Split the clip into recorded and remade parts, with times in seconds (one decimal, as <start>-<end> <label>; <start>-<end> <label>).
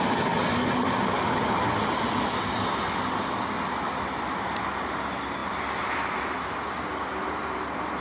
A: 0.0-8.0 recorded